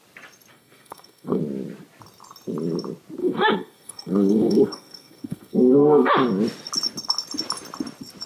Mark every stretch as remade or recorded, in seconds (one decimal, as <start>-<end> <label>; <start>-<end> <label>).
0.0-0.5 recorded; 0.5-1.4 remade; 1.4-3.2 recorded; 3.2-6.1 remade; 6.1-8.3 recorded